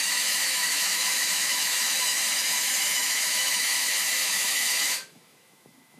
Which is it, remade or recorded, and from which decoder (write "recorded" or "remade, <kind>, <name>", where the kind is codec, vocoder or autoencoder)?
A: remade, autoencoder, DAC-VAE